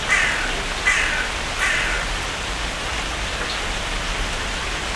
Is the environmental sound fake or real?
real